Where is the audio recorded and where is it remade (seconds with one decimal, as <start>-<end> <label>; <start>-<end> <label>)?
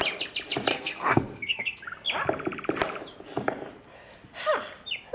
0.0-0.7 recorded; 0.7-1.8 remade; 1.8-5.1 recorded